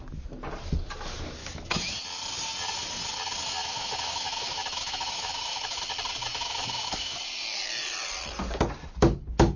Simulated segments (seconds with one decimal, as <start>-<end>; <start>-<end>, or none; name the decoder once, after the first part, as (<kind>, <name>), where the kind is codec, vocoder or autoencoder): 1.4-2.0 (autoencoder, DAC-VAE); 3.6-5.8; 6.3-7.2